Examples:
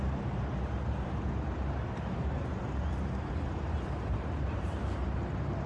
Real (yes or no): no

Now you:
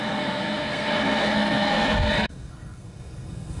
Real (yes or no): no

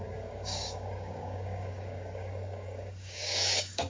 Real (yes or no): no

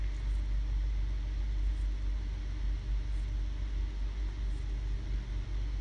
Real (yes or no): yes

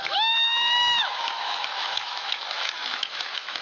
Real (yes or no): no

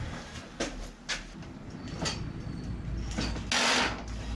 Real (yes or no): yes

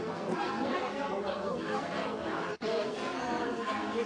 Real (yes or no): no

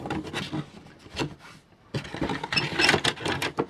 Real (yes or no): yes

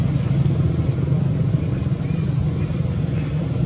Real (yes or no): yes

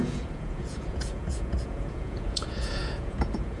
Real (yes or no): no